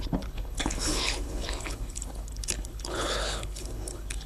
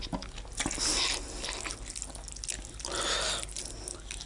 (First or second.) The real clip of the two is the second